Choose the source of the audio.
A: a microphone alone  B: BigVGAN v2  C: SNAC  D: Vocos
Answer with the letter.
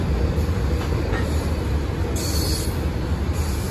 A